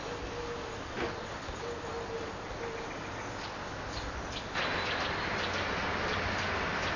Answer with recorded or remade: recorded